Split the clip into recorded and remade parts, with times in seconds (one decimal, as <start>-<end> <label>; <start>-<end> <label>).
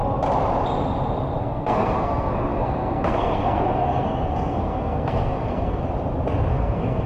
0.0-1.4 recorded; 1.4-5.8 remade; 5.8-6.5 recorded; 6.5-7.1 remade